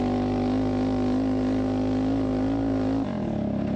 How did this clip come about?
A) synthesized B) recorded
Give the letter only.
B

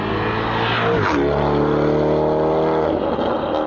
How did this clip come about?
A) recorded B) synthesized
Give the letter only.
A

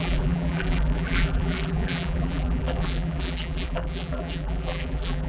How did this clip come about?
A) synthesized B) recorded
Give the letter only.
A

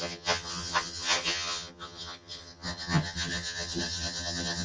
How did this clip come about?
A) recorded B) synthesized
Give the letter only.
B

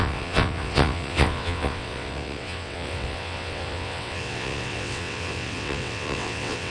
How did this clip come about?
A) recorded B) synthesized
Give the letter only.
B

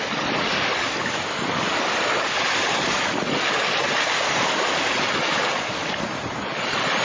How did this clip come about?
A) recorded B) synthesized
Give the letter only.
A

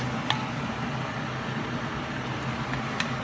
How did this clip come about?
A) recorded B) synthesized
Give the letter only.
A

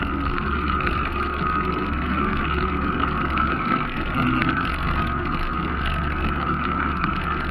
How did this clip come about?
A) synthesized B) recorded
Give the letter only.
A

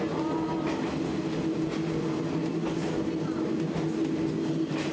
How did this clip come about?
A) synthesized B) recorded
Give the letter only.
B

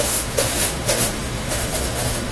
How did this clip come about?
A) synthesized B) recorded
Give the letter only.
A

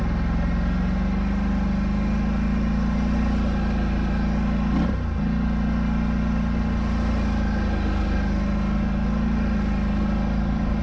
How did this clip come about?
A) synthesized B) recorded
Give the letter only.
B